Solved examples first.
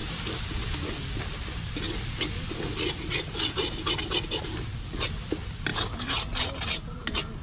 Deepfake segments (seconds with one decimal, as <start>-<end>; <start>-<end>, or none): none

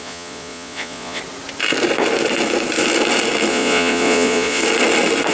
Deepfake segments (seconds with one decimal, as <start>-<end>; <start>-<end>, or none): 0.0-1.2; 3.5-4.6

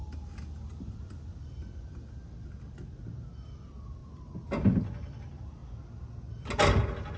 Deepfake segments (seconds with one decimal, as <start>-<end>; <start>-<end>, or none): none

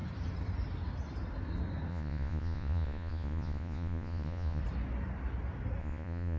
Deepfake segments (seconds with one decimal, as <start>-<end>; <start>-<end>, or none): 1.9-4.6; 5.8-6.4

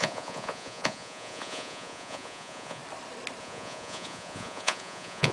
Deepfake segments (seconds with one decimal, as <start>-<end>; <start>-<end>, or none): 0.0-2.8; 3.4-5.3

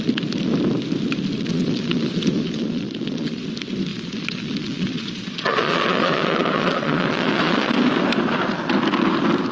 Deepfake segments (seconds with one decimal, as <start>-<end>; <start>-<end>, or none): 1.5-3.4; 3.9-7.7

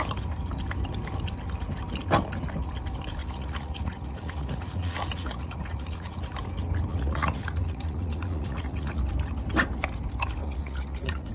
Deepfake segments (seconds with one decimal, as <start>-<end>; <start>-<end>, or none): 3.2-6.2; 6.9-9.0; 10.4-11.3

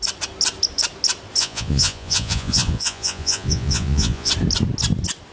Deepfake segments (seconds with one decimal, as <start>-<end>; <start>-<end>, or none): 1.4-4.3